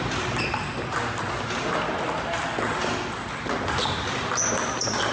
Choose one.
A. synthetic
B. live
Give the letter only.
B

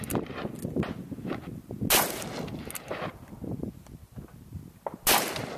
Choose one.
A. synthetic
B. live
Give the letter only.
B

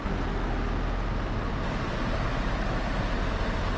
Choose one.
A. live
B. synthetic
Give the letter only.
A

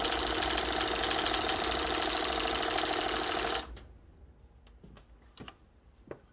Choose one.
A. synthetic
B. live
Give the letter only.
B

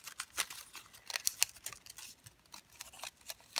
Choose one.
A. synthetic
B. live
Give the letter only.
B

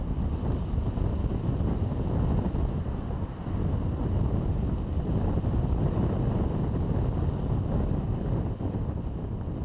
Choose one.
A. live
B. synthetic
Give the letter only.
A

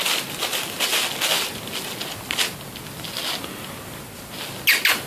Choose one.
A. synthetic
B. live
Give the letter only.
B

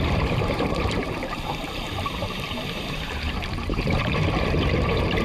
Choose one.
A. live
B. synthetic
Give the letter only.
B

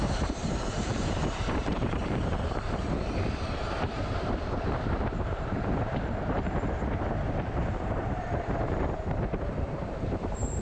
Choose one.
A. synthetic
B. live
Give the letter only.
A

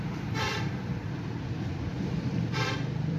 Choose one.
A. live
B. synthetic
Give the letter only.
B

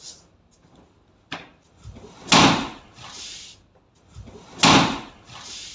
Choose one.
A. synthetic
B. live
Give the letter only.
B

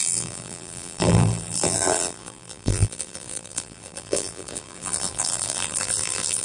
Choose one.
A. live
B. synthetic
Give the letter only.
B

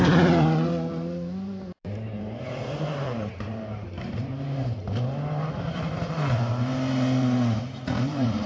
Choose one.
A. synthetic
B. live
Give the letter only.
A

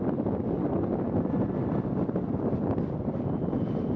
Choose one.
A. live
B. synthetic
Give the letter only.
A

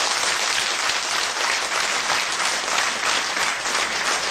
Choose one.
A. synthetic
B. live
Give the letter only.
B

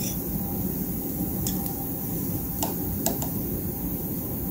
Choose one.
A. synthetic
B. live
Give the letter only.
A